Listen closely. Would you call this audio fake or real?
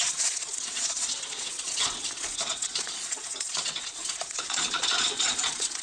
fake